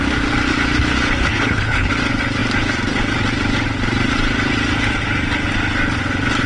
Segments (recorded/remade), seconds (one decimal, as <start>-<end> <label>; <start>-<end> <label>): 0.0-1.3 recorded; 1.3-1.9 remade; 1.9-6.5 recorded